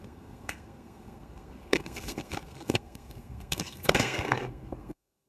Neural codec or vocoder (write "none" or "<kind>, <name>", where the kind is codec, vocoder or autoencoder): codec, SNAC